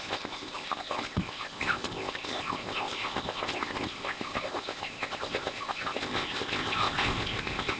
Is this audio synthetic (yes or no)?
yes